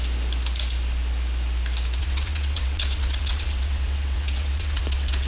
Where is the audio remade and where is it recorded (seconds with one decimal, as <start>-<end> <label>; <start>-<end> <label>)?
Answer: 0.0-2.0 recorded; 2.0-5.3 remade